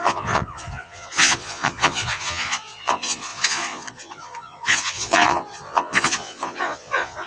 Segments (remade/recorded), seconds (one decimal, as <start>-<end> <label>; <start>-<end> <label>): 0.0-7.3 remade